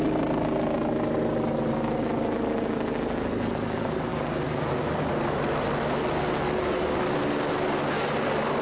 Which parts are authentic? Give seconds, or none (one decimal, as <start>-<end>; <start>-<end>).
0.0-8.6